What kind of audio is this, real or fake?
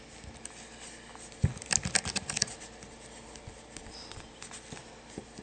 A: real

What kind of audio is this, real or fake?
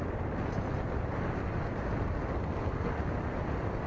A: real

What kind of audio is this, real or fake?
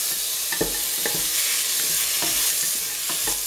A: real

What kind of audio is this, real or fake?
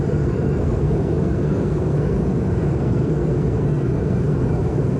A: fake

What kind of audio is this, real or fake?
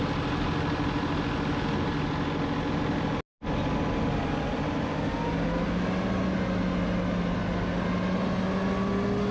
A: real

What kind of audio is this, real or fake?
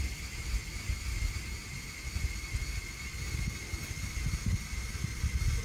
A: real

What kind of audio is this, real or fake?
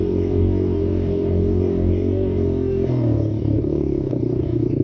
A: fake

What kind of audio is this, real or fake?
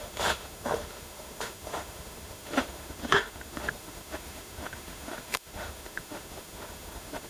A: fake